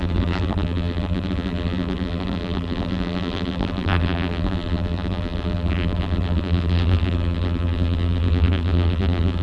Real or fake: fake